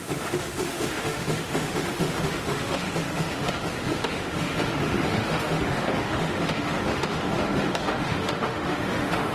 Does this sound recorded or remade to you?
remade